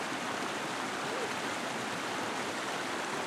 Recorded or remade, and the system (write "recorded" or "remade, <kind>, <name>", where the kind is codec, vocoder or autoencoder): recorded